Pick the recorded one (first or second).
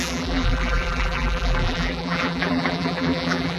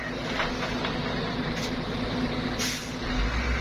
second